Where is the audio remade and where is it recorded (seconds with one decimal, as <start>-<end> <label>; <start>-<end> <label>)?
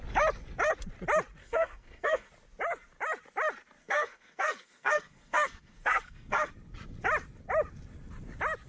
0.0-1.4 recorded; 1.4-2.3 remade; 2.3-3.8 recorded; 3.8-6.5 remade; 6.5-8.7 recorded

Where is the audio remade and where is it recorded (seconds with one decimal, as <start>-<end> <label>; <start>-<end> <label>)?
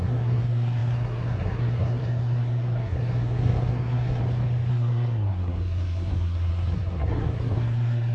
0.0-4.2 remade; 4.2-4.7 recorded; 4.7-8.1 remade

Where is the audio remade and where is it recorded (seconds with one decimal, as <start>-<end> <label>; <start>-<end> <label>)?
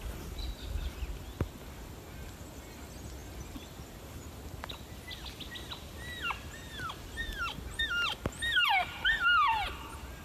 0.0-10.2 recorded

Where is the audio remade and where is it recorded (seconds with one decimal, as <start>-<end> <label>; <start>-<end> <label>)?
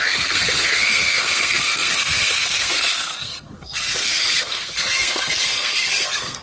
0.0-6.4 remade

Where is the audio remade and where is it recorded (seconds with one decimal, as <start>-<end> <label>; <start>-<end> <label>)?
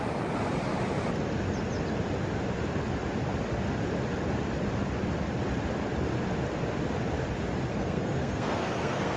0.0-7.7 recorded; 7.7-9.2 remade